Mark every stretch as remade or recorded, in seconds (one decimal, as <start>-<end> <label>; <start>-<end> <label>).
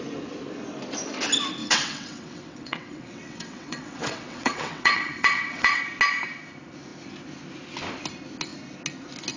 0.0-1.6 recorded; 1.6-5.8 remade; 5.8-9.4 recorded